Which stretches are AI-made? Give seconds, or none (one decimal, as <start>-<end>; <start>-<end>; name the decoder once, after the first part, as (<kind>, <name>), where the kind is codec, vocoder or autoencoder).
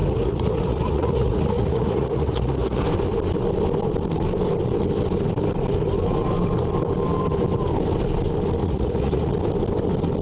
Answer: 0.0-2.8 (vocoder, Vocos); 8.6-9.3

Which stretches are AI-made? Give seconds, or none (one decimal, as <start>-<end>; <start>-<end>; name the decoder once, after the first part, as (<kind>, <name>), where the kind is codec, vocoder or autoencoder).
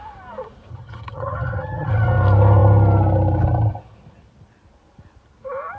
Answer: 0.7-1.9 (vocoder, HiFi-GAN)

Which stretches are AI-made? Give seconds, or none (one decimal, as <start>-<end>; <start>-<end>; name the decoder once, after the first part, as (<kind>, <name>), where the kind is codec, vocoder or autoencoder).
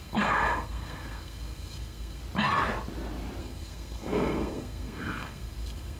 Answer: 0.0-2.2 (codec, SNAC); 3.4-6.0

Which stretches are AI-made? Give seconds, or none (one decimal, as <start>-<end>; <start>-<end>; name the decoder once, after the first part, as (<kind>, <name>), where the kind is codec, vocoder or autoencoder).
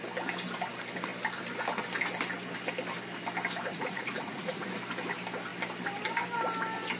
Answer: 3.7-4.6 (vocoder, Vocos)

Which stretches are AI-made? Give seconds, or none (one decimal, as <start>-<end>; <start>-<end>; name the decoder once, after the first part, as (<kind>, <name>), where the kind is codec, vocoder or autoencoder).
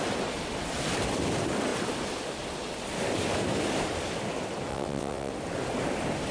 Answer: 4.7-5.3 (vocoder, WaveNeXt)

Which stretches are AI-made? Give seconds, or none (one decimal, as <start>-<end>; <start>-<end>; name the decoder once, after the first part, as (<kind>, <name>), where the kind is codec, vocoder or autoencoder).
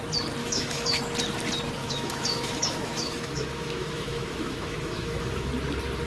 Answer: 0.4-1.0 (autoencoder, DAC-VAE); 1.8-5.5